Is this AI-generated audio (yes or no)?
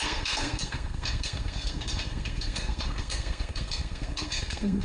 yes